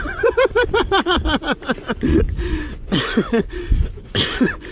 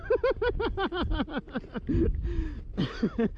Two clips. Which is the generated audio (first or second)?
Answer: first